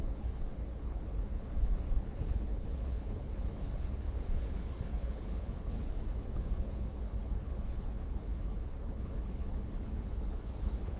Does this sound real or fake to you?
fake